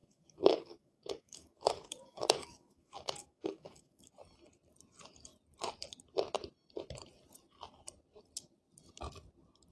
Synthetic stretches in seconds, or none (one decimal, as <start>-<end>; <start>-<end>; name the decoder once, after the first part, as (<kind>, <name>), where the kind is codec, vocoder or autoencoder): 0.0-4.1 (codec, DAC)